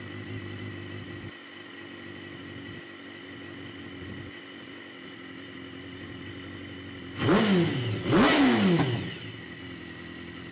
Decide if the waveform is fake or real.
real